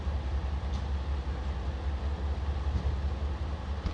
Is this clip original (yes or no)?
yes